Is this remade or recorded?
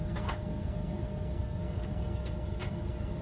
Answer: remade